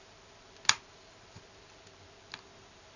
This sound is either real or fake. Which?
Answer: real